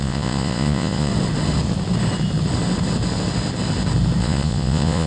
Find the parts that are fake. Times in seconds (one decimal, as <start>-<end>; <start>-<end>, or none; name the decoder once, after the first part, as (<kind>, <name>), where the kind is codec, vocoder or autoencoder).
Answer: 0.0-1.1 (vocoder, Vocos); 4.2-5.1